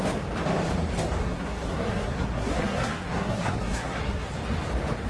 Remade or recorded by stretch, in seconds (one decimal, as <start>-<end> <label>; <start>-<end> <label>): 0.0-1.2 recorded; 1.2-4.3 remade; 4.3-5.1 recorded